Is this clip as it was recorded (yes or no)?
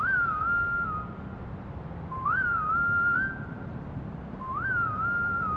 yes